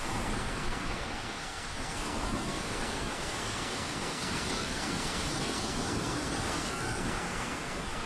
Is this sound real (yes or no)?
no